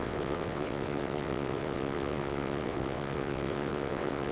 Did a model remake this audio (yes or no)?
yes